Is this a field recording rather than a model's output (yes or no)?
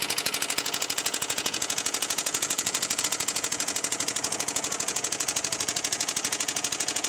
no